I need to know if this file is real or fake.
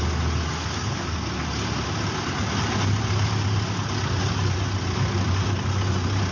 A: real